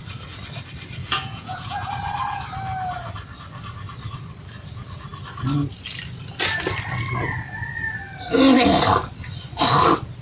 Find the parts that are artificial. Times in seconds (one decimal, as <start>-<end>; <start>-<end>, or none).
1.0-1.9